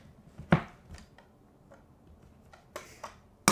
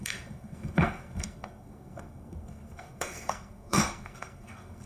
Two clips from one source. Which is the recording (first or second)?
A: first